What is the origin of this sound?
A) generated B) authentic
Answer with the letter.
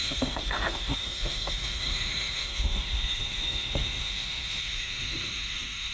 A